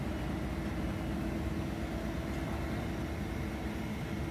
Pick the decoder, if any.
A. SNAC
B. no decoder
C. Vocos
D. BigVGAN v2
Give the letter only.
B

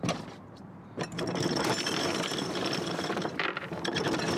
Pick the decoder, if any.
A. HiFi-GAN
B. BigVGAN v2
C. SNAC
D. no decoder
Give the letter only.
B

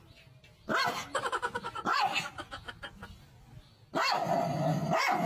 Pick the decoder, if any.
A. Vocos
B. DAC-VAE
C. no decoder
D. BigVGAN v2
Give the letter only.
C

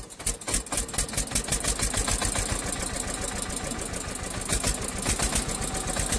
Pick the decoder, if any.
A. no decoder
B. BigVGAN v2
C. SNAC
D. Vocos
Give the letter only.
A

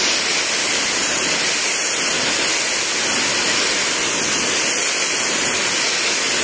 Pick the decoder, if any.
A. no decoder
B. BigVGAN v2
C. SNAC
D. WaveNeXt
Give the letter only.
A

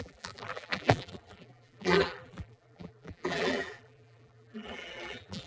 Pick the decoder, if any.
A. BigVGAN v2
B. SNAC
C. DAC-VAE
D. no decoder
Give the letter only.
A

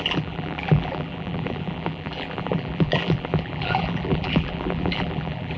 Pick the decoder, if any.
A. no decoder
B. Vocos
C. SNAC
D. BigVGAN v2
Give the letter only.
D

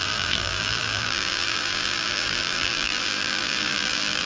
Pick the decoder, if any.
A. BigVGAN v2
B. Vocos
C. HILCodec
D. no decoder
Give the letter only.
A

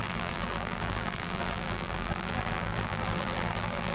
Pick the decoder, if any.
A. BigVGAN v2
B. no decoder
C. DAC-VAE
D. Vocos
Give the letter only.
A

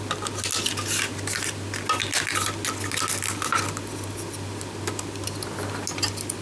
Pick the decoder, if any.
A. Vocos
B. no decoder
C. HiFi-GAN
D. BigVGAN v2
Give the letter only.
B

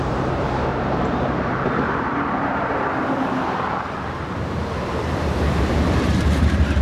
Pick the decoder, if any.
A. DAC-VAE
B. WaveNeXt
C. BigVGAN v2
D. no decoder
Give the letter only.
C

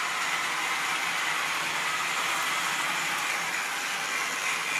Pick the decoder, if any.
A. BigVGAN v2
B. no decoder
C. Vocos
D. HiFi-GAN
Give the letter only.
B